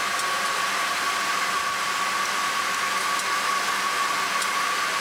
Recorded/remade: recorded